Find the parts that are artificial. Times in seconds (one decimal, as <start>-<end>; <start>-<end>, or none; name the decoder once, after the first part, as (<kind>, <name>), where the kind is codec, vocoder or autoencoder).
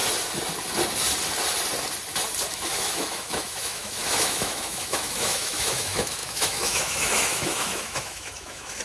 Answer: 2.5-8.8 (autoencoder, DAC-VAE)